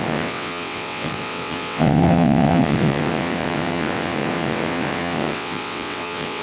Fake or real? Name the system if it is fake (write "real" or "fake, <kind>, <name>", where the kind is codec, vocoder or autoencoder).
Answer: fake, vocoder, WaveNeXt